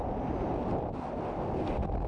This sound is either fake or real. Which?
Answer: real